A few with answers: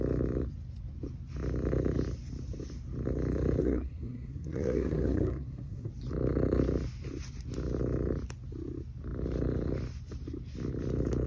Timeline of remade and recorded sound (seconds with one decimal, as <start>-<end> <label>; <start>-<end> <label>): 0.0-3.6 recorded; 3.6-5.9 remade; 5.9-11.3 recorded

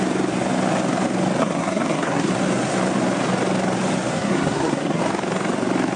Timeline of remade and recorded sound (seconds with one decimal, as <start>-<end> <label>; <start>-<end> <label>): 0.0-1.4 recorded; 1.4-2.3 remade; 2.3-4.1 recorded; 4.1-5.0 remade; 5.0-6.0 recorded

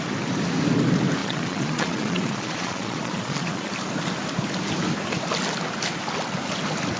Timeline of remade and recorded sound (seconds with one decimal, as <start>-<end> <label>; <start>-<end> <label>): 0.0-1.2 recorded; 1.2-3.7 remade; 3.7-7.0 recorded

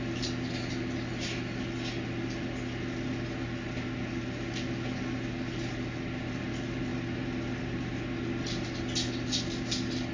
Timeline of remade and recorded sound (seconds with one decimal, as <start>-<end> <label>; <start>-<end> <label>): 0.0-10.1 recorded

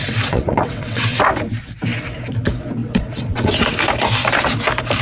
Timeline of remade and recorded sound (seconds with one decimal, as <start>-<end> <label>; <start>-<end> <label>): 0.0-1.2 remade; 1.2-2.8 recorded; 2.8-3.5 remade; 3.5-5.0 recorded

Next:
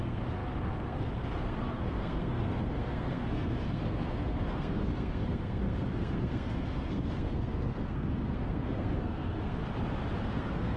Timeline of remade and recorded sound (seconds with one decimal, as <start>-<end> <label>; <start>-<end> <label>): 0.0-9.6 remade; 9.6-10.2 recorded; 10.2-10.8 remade

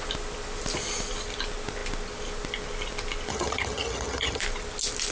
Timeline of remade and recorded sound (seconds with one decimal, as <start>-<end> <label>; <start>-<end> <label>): 0.0-3.3 recorded; 3.3-4.4 remade; 4.4-5.1 recorded

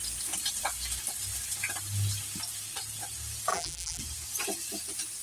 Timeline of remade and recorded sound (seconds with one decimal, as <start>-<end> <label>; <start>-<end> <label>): 0.0-3.5 recorded; 3.5-4.0 remade; 4.0-5.2 recorded